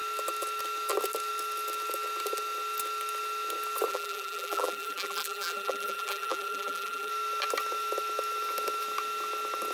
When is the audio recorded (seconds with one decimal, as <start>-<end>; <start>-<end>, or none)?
0.0-3.9; 7.1-9.7